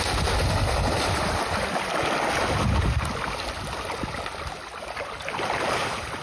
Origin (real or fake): real